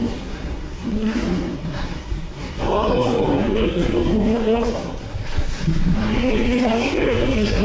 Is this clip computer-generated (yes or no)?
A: yes